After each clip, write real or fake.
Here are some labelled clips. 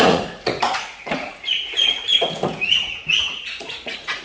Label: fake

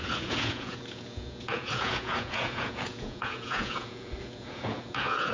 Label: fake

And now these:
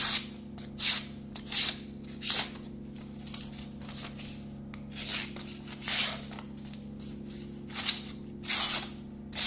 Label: real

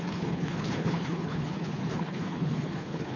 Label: fake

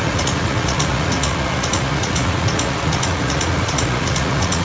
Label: fake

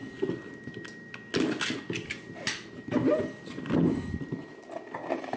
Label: real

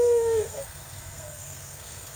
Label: fake